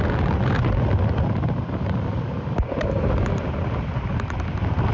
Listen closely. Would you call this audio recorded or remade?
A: recorded